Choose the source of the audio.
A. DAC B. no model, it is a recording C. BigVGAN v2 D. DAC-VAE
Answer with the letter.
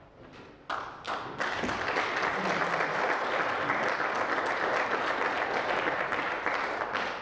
B